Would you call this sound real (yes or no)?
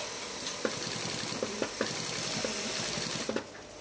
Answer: yes